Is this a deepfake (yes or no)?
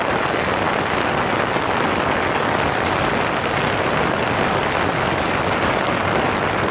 no